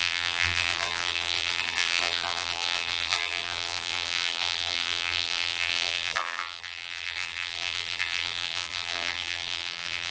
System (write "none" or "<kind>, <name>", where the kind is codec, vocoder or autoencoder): vocoder, BigVGAN v2